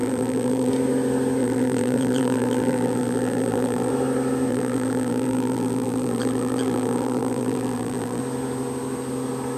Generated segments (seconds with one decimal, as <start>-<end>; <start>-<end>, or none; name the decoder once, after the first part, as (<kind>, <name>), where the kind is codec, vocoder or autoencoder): 0.0-0.7 (vocoder, BigVGAN v2); 1.4-3.9; 4.5-8.2